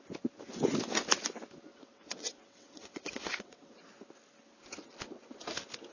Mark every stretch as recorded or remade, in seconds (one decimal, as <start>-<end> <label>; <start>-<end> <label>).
0.0-1.7 recorded; 1.7-3.8 remade; 3.8-5.9 recorded